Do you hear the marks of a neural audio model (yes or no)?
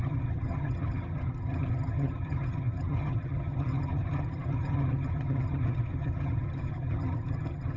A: yes